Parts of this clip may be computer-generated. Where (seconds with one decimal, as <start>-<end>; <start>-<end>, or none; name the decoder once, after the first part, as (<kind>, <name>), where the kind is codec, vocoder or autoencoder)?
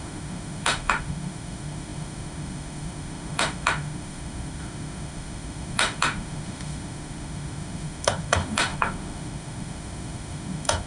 0.0-10.9 (autoencoder, DAC-VAE)